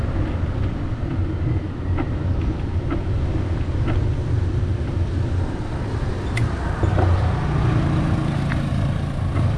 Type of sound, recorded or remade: recorded